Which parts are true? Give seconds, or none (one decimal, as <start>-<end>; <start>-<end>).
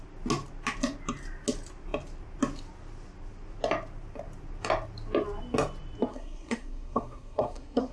0.0-6.1